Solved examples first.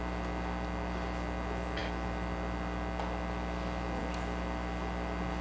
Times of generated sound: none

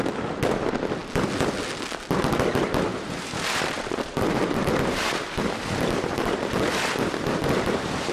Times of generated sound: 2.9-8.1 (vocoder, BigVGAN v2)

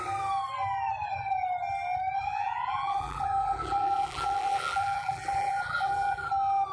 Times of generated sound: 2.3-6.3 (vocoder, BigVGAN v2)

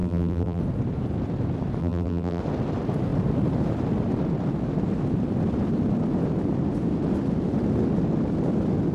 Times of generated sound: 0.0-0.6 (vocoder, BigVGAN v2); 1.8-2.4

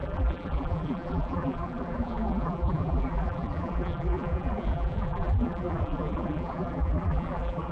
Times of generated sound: 0.0-7.7 (vocoder, BigVGAN v2)